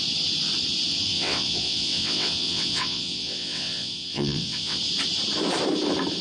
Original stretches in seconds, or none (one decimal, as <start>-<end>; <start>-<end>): 0.0-1.1; 4.8-6.2